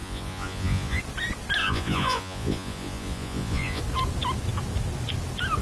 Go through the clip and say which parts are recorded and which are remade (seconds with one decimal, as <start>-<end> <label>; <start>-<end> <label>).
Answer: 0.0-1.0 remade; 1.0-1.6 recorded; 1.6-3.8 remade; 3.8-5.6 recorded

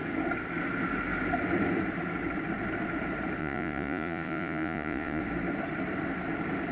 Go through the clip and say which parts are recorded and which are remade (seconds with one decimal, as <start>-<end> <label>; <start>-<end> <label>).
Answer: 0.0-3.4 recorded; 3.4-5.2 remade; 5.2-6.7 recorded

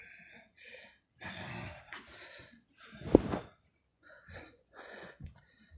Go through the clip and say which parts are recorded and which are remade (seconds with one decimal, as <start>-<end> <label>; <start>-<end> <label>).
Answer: 0.0-3.9 recorded; 3.9-5.3 remade; 5.3-5.8 recorded

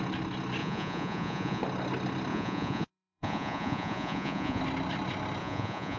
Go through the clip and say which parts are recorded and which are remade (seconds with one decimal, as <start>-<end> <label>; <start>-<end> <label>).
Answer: 0.0-0.6 recorded; 0.6-1.6 remade; 1.6-2.3 recorded; 2.3-4.6 remade; 4.6-5.4 recorded; 5.4-6.0 remade

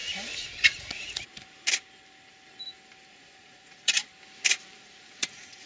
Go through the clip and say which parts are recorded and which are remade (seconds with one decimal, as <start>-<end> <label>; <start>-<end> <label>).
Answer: 0.0-0.6 recorded; 0.6-1.3 remade; 1.3-3.1 recorded; 3.1-4.1 remade; 4.1-4.8 recorded; 4.8-5.7 remade

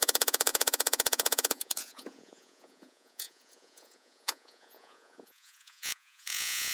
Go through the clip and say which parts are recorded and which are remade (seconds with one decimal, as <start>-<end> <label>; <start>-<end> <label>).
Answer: 0.0-6.7 remade

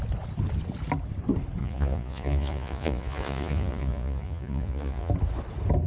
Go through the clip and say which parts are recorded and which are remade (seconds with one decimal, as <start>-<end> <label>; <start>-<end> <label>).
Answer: 0.0-1.6 recorded; 1.6-5.1 remade; 5.1-5.9 recorded

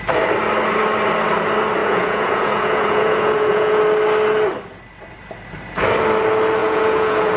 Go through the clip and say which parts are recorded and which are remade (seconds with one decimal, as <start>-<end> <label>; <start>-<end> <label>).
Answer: 0.0-1.8 recorded; 1.8-3.8 remade; 3.8-6.6 recorded; 6.6-7.4 remade